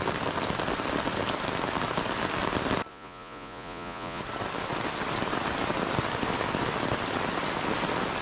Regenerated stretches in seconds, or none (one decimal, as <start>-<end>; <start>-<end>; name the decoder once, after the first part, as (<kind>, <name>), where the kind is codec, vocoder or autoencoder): 2.9-4.2 (vocoder, Vocos)